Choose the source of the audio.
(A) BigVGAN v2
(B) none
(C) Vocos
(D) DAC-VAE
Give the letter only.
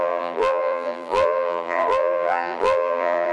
A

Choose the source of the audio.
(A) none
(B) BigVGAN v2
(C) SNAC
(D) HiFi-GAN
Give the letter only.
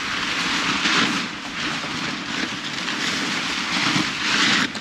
A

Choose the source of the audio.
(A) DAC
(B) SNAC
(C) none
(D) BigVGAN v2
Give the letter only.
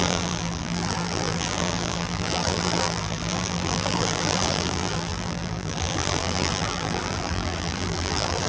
D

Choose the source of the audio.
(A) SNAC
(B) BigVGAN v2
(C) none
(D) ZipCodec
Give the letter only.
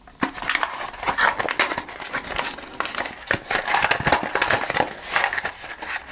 C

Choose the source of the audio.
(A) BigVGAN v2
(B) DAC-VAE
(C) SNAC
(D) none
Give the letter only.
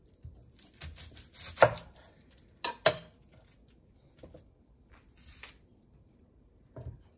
D